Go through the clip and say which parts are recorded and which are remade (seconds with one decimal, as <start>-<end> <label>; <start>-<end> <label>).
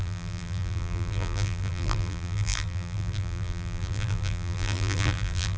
0.0-5.6 remade